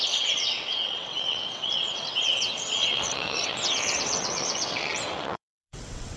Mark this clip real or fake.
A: fake